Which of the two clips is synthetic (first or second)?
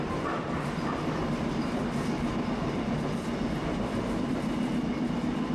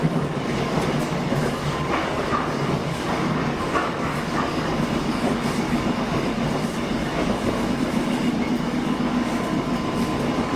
second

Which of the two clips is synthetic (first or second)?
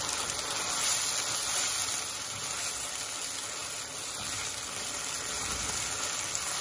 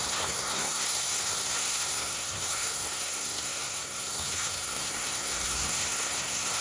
second